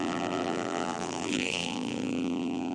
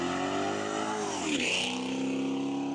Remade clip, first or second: first